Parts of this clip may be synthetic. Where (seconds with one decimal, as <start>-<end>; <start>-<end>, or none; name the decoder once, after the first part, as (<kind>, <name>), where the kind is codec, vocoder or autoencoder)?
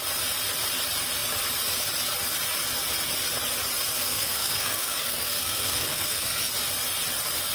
4.0-6.5 (codec, SNAC)